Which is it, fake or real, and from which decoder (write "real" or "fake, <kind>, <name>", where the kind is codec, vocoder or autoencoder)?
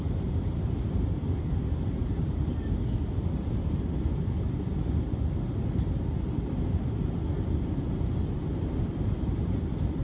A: real